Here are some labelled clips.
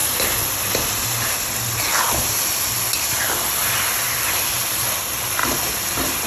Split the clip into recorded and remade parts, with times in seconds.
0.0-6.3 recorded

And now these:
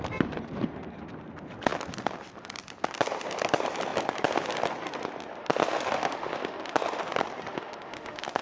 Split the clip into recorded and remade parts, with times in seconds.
0.0-5.4 recorded; 5.4-7.0 remade; 7.0-7.5 recorded; 7.5-8.4 remade

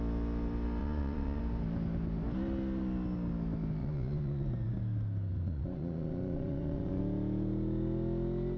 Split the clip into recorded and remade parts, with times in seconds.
0.0-0.8 recorded; 0.8-1.4 remade; 1.4-3.8 recorded; 3.8-4.7 remade; 4.7-5.3 recorded; 5.3-7.0 remade; 7.0-8.6 recorded

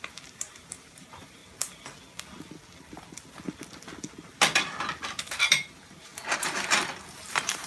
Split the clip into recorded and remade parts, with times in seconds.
0.0-1.4 remade; 1.4-5.2 recorded; 5.2-6.1 remade; 6.1-7.3 recorded; 7.3-7.7 remade